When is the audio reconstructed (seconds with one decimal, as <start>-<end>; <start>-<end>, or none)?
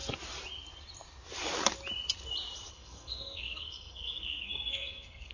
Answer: 2.7-5.3